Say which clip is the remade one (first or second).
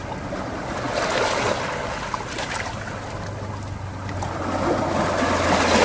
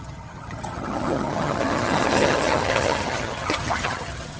second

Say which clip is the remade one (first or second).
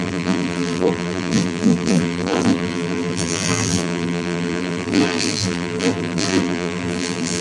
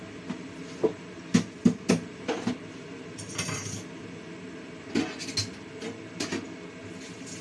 first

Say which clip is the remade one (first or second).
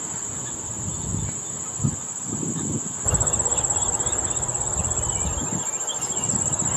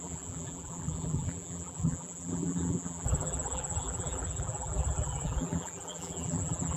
second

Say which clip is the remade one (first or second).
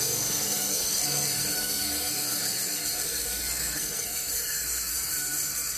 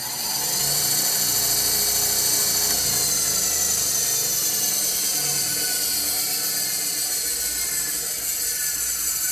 first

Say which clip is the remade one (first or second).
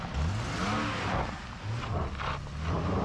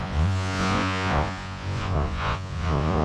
second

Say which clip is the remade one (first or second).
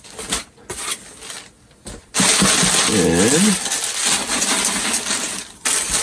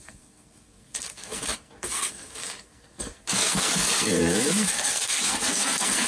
second